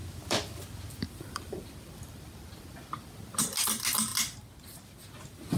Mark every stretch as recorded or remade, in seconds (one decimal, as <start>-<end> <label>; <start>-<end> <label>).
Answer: 0.0-3.4 remade; 3.4-5.6 recorded

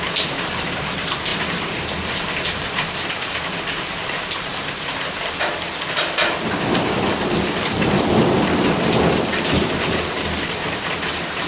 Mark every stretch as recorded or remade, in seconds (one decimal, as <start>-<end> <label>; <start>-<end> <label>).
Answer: 0.0-11.5 remade

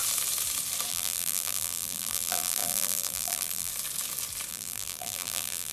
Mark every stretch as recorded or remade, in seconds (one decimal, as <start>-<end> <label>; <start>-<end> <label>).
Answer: 0.0-0.9 recorded; 0.9-3.7 remade; 3.7-4.5 recorded; 4.5-5.7 remade

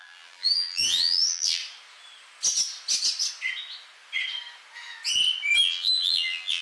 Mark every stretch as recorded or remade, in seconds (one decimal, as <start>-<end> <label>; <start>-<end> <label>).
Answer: 0.0-1.6 remade; 1.6-5.6 recorded; 5.6-6.6 remade